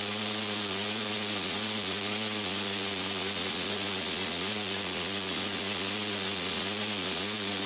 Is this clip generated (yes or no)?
yes